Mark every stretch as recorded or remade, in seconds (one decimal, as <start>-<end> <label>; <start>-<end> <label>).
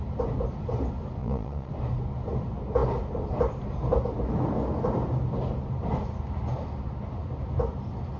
0.0-1.2 recorded; 1.2-1.7 remade; 1.7-8.2 recorded